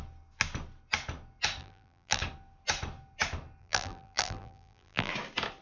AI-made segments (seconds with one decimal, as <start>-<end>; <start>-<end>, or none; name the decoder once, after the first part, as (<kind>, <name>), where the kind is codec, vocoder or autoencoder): 1.6-2.2 (vocoder, BigVGAN v2); 3.6-5.1